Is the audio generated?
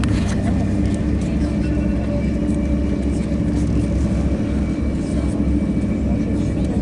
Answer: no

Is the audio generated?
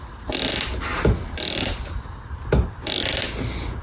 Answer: no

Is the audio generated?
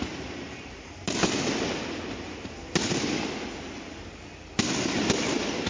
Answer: no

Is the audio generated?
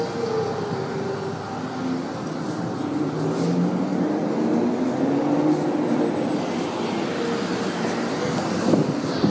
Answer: no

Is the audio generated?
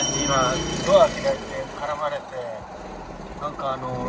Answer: no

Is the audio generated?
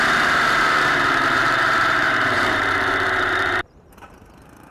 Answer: yes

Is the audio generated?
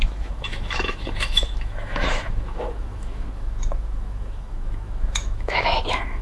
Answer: yes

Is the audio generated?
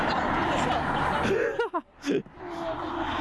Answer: no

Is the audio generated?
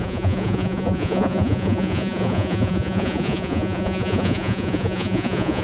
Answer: yes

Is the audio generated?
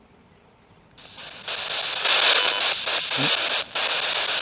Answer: no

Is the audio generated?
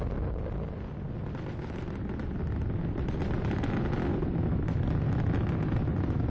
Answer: no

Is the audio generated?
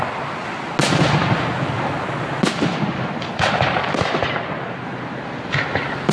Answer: no